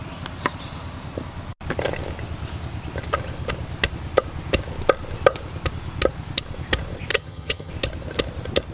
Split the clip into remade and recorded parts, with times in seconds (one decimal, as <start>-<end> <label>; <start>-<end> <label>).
0.0-7.1 recorded; 7.1-7.7 remade; 7.7-8.7 recorded